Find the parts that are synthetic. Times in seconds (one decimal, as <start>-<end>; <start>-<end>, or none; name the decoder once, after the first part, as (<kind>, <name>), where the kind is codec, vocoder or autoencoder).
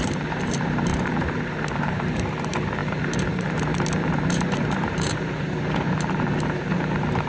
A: 0.0-7.3 (vocoder, BigVGAN v2)